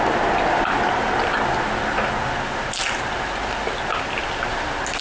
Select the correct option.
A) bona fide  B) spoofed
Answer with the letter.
A